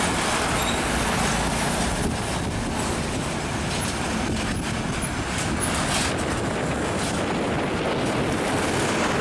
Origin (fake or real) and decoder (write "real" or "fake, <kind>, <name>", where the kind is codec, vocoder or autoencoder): real